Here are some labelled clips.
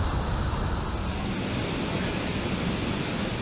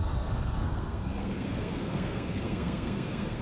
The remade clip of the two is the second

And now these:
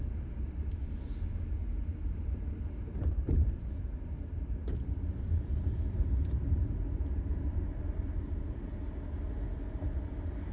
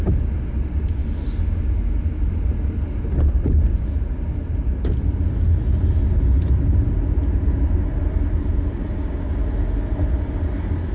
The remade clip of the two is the first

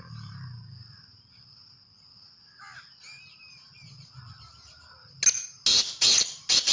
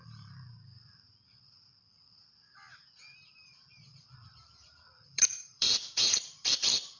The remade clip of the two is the second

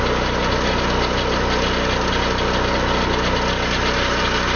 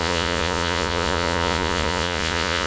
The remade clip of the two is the second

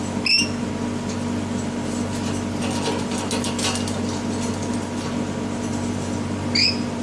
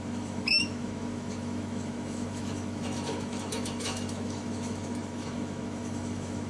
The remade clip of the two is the second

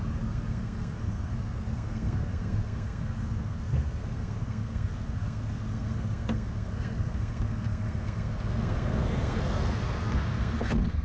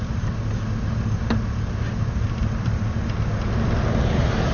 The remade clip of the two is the first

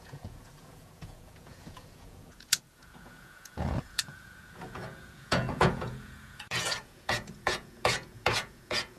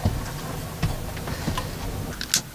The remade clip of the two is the first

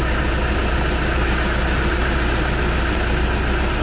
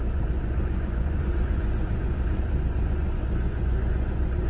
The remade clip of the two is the second